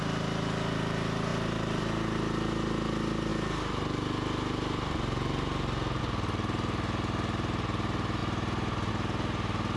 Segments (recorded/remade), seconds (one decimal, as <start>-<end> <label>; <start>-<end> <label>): 0.0-9.8 recorded